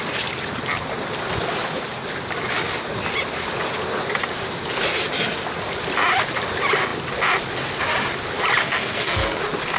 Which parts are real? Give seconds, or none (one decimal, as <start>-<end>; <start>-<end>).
0.0-8.6; 9.4-9.8